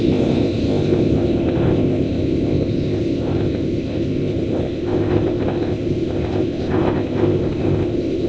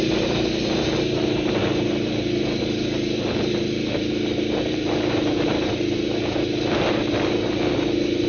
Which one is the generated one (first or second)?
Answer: first